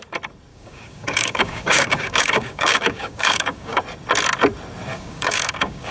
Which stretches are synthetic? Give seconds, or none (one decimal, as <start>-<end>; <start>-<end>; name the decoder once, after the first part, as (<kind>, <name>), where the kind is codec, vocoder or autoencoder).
0.5-3.8 (codec, DAC); 4.9-5.9